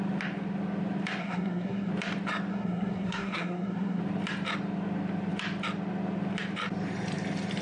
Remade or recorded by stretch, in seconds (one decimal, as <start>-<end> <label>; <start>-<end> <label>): 0.0-1.2 recorded; 1.2-1.9 remade; 1.9-2.5 recorded; 2.5-4.0 remade; 4.0-7.6 recorded